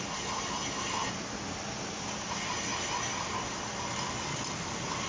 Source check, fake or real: real